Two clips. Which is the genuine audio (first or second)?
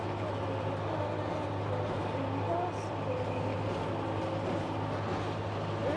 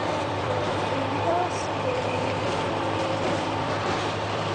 first